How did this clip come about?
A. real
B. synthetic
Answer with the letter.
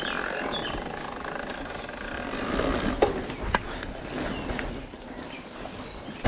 A